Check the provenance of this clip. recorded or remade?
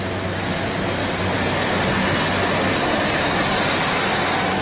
recorded